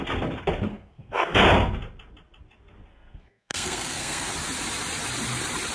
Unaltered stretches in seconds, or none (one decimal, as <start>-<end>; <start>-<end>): 0.0-0.7; 1.4-2.9; 4.3-5.7